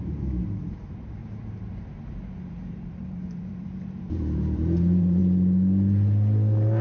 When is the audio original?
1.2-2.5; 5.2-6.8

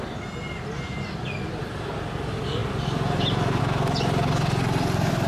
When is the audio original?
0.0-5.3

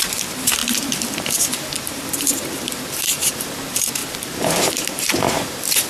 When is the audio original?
none

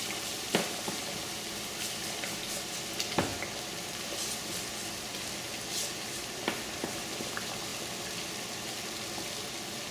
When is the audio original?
0.0-9.9